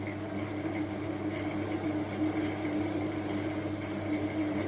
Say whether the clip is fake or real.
real